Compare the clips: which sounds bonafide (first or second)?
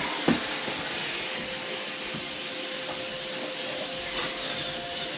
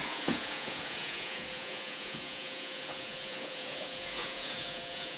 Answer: first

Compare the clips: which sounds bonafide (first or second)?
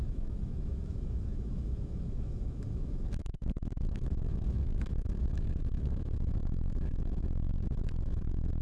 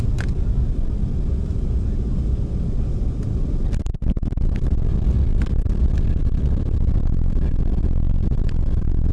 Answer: second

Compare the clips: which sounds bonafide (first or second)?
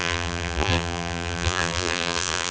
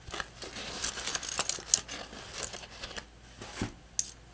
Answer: second